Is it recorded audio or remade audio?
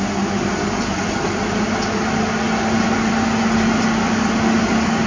recorded